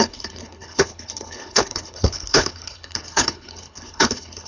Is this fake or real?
fake